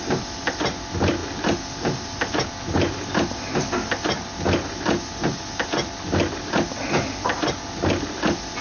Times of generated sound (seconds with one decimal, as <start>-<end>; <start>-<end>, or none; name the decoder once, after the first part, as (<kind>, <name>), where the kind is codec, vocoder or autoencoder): none